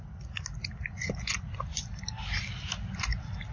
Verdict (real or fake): real